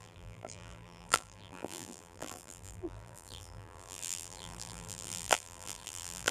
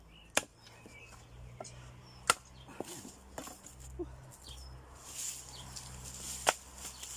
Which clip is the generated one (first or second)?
first